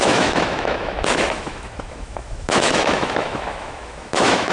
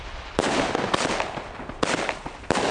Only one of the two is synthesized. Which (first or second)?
first